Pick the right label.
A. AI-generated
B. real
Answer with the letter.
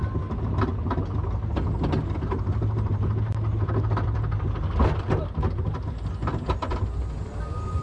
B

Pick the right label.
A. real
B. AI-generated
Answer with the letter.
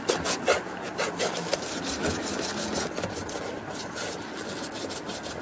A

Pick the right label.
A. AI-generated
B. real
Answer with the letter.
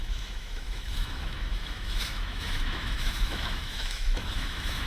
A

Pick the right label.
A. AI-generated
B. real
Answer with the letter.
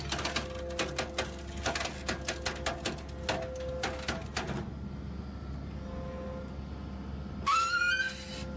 B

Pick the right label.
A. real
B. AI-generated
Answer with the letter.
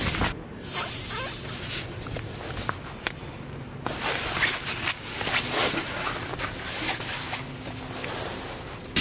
A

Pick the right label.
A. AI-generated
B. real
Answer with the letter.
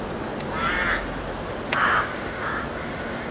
B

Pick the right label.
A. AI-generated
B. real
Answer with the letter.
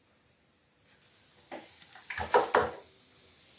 B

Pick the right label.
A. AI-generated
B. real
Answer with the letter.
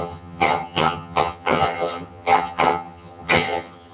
A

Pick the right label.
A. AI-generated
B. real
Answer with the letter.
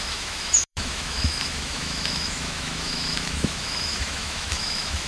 A